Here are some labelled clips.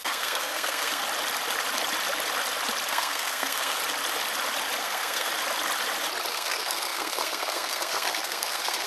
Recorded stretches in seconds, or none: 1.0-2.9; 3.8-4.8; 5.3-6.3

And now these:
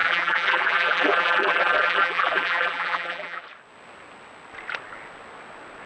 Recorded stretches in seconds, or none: 3.4-5.9

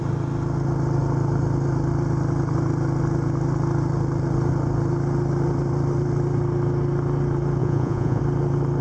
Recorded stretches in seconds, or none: 0.0-7.6; 8.2-8.8

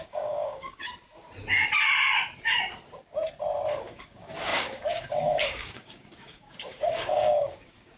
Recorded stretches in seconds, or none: 0.9-3.7

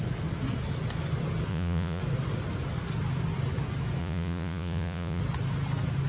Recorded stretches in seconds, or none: 0.0-1.5; 2.0-4.0; 5.2-6.1